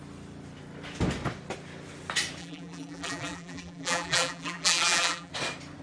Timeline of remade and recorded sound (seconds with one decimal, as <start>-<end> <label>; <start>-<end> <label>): 0.0-2.4 recorded; 2.4-5.3 remade; 5.3-5.8 recorded